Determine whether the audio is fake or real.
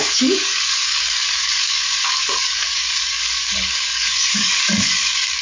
fake